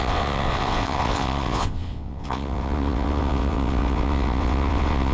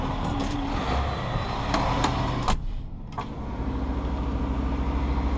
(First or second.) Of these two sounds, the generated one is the first